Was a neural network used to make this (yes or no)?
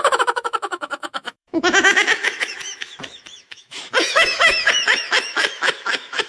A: yes